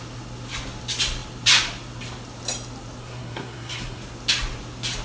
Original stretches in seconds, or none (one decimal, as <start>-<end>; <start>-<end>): 0.0-3.0; 4.0-5.0